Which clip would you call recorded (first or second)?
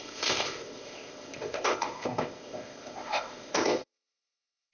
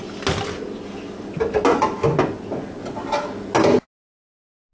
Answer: second